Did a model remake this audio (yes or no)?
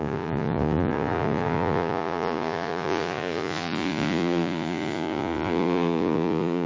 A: yes